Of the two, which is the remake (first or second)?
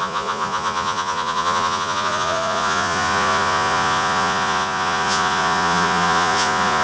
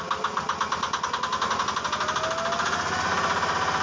first